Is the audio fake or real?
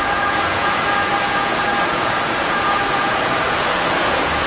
fake